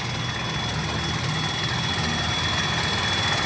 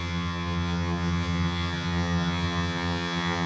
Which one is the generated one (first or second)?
second